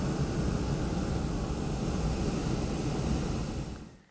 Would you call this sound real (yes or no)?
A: yes